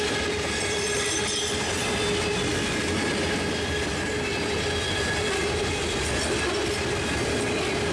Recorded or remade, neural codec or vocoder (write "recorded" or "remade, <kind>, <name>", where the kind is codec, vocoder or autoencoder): recorded